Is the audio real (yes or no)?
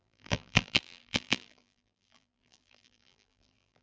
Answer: no